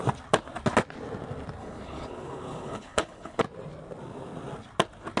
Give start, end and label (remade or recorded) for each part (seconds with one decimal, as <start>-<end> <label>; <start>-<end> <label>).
0.0-1.6 recorded; 1.6-3.4 remade; 3.4-5.2 recorded